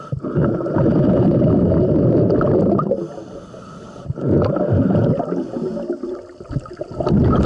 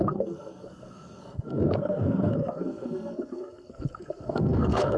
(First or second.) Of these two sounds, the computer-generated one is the second